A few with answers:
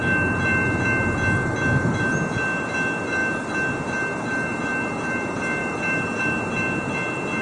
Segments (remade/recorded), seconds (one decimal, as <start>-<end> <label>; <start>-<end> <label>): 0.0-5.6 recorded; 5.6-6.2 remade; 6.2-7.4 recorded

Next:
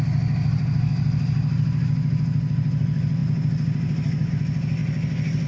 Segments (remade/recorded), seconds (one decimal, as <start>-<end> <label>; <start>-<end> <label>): 0.0-5.5 recorded

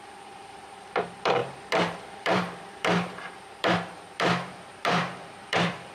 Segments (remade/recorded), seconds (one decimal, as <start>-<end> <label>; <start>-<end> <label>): 0.0-5.9 remade

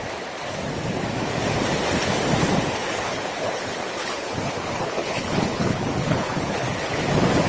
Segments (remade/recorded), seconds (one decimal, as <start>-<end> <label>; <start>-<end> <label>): 0.0-2.8 recorded; 2.8-7.0 remade; 7.0-7.5 recorded

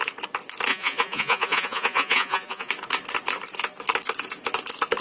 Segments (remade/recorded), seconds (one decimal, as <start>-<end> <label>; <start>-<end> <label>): 0.0-0.7 recorded; 0.7-2.7 remade; 2.7-5.0 recorded

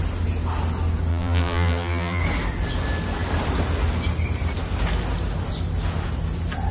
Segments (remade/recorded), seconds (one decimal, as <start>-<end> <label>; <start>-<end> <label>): 0.0-1.1 recorded; 1.1-2.2 remade; 2.2-6.7 recorded

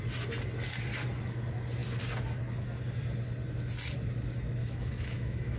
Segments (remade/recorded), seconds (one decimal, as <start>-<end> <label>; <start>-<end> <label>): 0.0-4.6 recorded; 4.6-5.6 remade